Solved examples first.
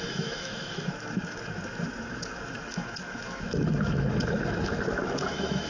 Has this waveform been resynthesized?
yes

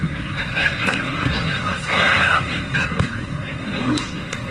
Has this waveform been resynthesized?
yes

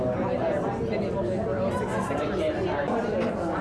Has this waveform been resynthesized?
no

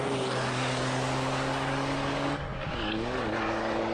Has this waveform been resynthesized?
yes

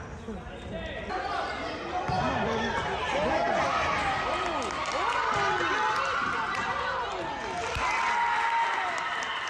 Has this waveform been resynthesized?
no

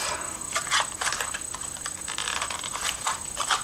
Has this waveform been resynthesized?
yes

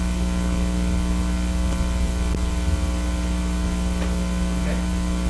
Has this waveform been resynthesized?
no